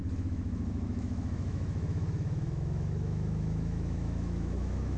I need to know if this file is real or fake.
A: fake